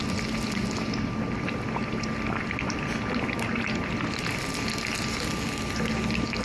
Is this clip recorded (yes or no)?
yes